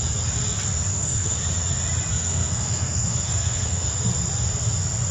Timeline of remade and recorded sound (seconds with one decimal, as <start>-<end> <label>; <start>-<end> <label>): 0.0-0.9 recorded; 0.9-1.4 remade; 1.4-2.1 recorded; 2.1-3.9 remade; 3.9-5.1 recorded